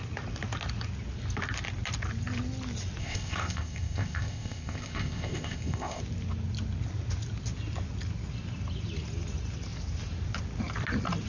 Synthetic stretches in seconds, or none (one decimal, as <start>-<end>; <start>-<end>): 3.0-6.0